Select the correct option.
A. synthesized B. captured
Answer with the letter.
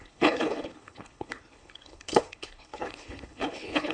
A